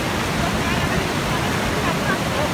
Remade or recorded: recorded